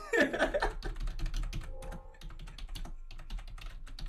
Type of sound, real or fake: real